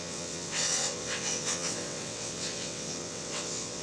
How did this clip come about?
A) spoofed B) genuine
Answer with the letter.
A